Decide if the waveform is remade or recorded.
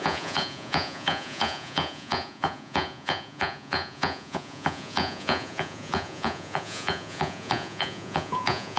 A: remade